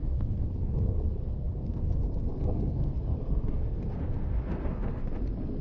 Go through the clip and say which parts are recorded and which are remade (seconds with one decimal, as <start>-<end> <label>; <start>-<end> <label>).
0.0-5.0 remade; 5.0-5.6 recorded